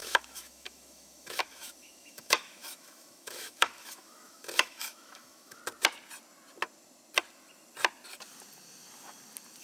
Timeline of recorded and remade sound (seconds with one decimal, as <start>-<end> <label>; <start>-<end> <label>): 0.0-5.6 remade; 5.6-9.6 recorded